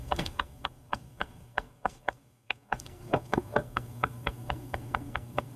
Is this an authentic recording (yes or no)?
no